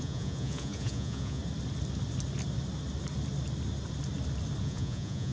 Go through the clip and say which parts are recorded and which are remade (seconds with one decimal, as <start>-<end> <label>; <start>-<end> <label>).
0.0-1.4 remade; 1.4-4.6 recorded; 4.6-5.3 remade